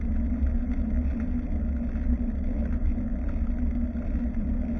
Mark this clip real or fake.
real